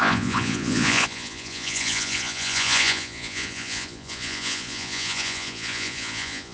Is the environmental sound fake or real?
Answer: fake